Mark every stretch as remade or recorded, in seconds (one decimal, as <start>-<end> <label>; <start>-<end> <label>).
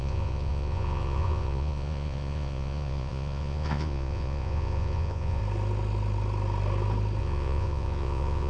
0.0-5.4 remade; 5.4-7.2 recorded; 7.2-8.5 remade